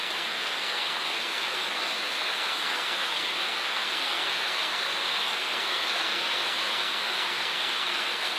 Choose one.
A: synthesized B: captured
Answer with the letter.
A